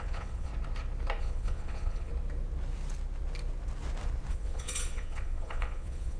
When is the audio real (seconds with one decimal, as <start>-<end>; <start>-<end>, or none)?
0.5-1.2; 2.1-4.3